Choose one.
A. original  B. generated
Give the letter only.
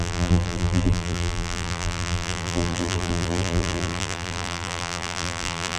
B